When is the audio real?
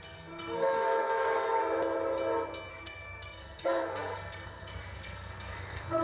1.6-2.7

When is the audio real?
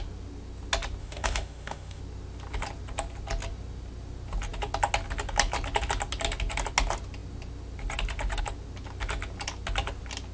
0.0-1.0; 2.0-10.3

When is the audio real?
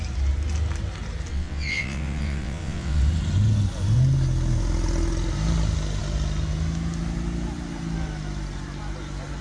0.0-1.3; 3.0-9.4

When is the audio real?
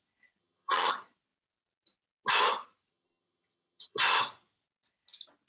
0.0-0.4; 0.9-2.9; 4.2-5.5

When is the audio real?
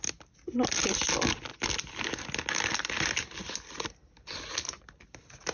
0.0-5.5